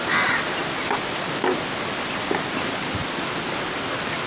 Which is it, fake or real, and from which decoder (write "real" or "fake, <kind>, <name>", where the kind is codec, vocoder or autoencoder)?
real